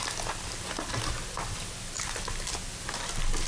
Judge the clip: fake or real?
real